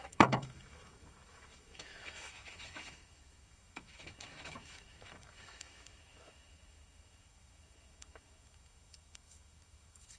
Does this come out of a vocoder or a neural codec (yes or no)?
yes